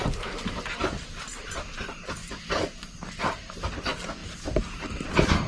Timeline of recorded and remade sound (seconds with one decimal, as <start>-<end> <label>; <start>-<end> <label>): 0.0-1.5 remade; 1.5-2.2 recorded; 2.2-2.7 remade; 2.7-5.5 recorded